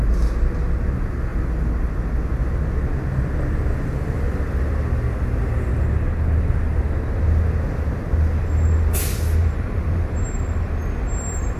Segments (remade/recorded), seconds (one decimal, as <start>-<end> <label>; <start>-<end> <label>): 0.0-9.4 recorded; 9.4-10.1 remade; 10.1-11.6 recorded